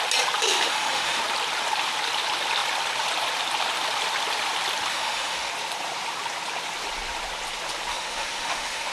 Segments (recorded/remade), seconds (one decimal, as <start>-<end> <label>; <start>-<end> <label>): 0.0-0.4 recorded; 0.4-1.2 remade; 1.2-4.9 recorded; 4.9-5.5 remade; 5.5-7.9 recorded; 7.9-8.9 remade

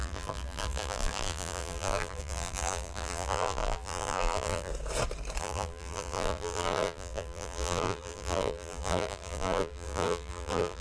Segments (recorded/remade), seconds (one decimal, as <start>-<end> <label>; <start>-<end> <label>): 0.0-4.7 remade; 4.7-5.4 recorded; 5.4-10.8 remade

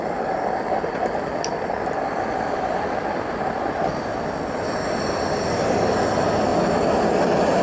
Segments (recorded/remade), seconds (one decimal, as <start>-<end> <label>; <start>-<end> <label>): 0.0-7.6 recorded

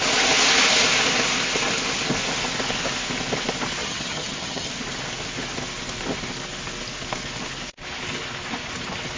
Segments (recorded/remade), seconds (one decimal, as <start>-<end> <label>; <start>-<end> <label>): 0.0-3.8 recorded; 3.8-4.7 remade; 4.7-9.2 recorded